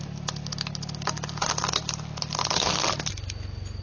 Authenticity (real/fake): real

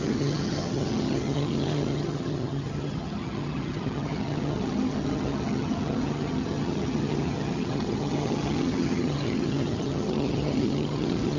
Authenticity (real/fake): fake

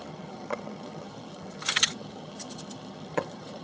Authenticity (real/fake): fake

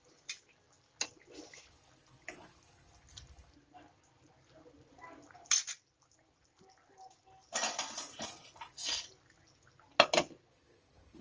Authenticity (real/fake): real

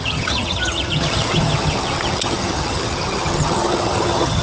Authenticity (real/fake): fake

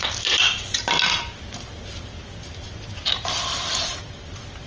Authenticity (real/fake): real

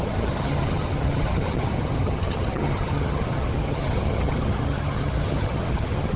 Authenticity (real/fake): fake